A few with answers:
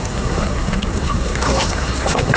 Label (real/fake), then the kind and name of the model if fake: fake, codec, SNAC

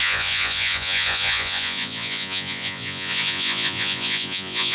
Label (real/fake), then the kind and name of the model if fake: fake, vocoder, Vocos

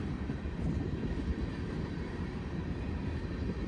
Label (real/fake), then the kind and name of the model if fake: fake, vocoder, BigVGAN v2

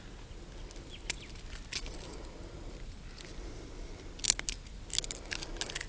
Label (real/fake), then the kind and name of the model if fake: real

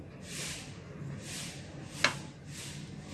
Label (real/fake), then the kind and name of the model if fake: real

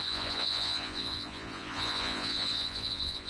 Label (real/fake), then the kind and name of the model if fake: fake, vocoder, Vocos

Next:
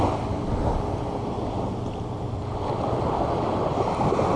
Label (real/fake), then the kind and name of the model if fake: real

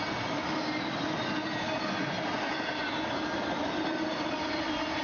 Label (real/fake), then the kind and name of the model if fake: real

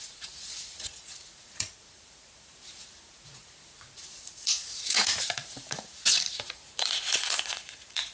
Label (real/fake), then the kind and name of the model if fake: fake, vocoder, Vocos